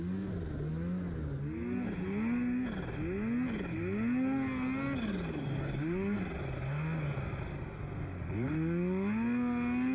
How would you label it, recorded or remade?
recorded